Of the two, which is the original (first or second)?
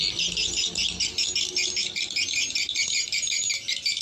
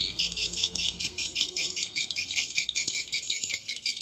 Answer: first